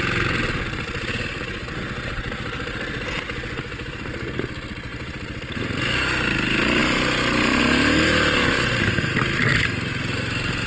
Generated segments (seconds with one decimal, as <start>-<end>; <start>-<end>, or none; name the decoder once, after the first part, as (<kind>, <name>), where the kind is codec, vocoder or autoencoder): 4.9-5.6 (vocoder, BigVGAN v2)